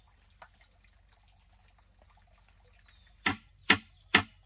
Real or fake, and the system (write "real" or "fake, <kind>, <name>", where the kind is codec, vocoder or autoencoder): real